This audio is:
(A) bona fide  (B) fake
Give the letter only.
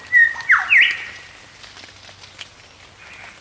A